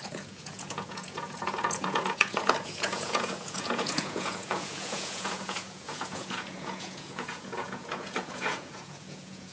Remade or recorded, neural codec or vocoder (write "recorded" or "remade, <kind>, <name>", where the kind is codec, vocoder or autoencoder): remade, vocoder, Vocos